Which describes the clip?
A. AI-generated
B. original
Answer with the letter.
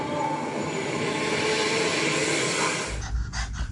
B